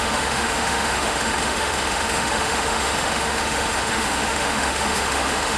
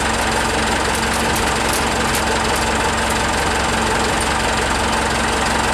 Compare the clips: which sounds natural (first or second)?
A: second